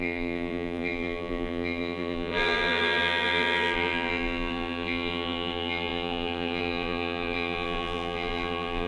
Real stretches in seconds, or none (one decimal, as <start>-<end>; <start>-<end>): none